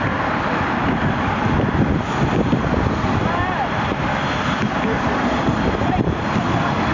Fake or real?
real